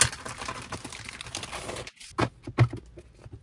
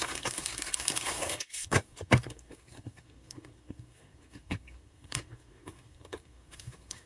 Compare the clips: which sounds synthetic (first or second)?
second